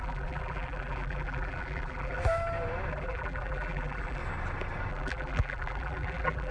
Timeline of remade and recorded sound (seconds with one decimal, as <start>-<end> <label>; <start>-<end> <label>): 0.0-2.2 remade; 2.2-2.9 recorded; 2.9-4.2 remade; 4.2-4.9 recorded; 4.9-6.5 remade